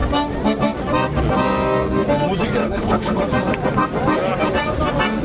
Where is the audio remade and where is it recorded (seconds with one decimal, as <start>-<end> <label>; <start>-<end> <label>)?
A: 0.0-2.6 recorded; 2.6-3.2 remade; 3.2-5.2 recorded

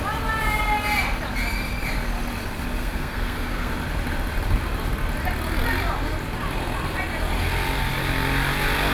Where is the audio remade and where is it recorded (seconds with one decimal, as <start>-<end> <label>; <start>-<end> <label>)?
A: 0.0-2.8 recorded; 2.8-3.7 remade; 3.7-8.9 recorded

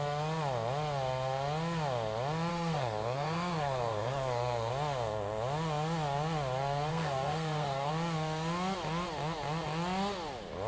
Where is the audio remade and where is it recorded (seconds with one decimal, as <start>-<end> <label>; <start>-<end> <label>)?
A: 0.0-2.5 recorded; 2.5-4.7 remade; 4.7-6.9 recorded; 6.9-7.9 remade; 7.9-10.7 recorded

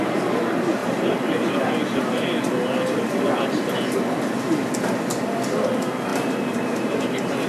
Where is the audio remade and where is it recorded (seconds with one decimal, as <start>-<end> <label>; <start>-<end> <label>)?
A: 0.0-0.8 recorded; 0.8-1.7 remade; 1.7-6.1 recorded; 6.1-7.0 remade; 7.0-7.5 recorded

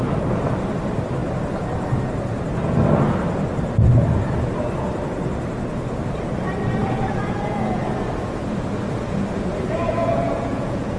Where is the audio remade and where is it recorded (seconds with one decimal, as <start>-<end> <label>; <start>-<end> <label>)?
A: 0.0-6.8 recorded; 6.8-7.8 remade; 7.8-9.8 recorded; 9.8-11.0 remade

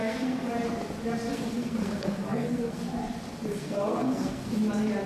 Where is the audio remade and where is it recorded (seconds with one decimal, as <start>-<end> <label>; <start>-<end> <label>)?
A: 0.0-0.5 remade; 0.5-1.3 recorded; 1.3-2.8 remade; 2.8-3.5 recorded; 3.5-4.5 remade; 4.5-5.1 recorded

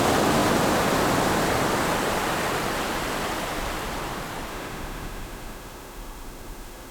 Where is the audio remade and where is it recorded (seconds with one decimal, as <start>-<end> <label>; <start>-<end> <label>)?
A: 0.0-4.5 recorded; 4.5-6.9 remade